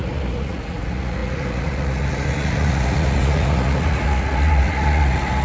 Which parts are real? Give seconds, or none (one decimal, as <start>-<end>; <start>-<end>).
none